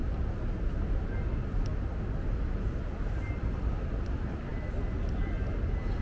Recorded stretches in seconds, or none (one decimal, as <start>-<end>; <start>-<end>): 0.0-6.0